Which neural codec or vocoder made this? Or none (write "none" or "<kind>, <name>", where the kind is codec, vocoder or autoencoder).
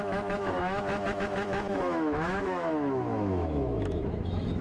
autoencoder, DAC-VAE